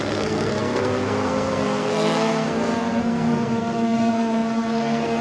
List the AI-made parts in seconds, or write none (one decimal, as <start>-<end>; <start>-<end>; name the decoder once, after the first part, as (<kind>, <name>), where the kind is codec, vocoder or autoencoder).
0.0-5.2 (codec, SNAC)